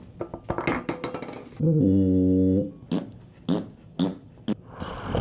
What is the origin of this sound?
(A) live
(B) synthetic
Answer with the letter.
A